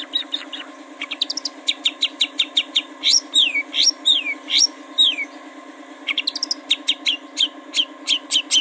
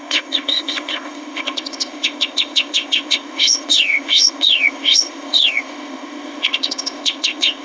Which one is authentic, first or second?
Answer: first